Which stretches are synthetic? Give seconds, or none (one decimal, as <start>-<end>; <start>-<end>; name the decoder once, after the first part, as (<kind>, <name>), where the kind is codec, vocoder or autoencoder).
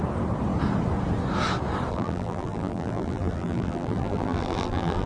1.9-5.1 (vocoder, BigVGAN v2)